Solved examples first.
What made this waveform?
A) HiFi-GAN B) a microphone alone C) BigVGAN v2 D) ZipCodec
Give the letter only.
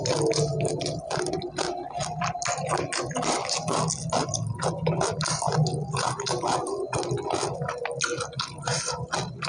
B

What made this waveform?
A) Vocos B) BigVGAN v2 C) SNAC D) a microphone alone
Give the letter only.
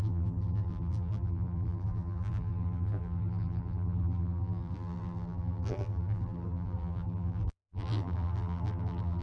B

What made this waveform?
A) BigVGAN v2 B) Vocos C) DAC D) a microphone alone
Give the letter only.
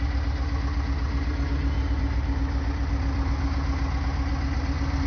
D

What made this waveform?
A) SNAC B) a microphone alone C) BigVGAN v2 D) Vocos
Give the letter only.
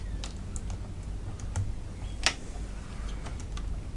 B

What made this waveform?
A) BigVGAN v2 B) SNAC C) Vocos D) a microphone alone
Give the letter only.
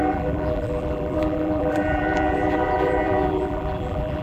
A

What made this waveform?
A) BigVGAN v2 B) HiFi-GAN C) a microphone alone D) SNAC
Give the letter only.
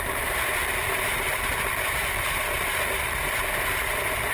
A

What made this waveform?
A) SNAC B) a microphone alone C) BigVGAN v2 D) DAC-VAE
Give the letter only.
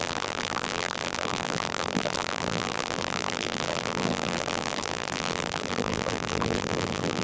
C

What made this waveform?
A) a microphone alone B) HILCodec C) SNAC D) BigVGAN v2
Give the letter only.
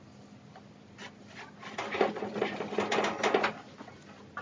A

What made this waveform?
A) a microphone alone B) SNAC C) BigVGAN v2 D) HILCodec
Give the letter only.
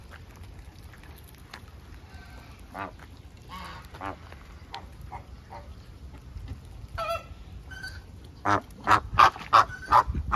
A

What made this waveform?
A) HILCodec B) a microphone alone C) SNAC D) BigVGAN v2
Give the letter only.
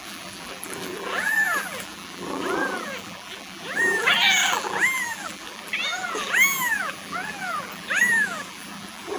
D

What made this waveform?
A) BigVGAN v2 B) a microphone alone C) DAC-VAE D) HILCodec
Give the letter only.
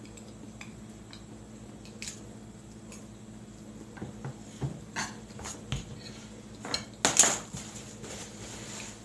B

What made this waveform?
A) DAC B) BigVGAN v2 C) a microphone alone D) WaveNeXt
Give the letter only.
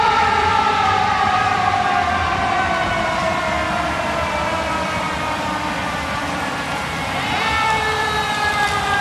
B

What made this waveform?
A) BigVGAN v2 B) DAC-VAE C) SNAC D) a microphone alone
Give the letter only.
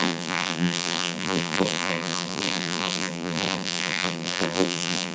A